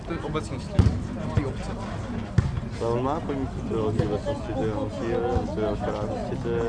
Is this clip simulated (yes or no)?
no